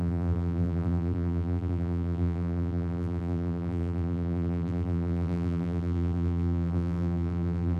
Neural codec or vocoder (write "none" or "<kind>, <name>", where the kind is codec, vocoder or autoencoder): vocoder, BigVGAN v2